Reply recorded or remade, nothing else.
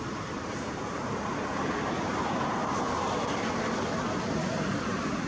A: remade